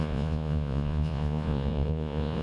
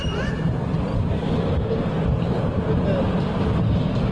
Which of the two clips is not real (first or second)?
first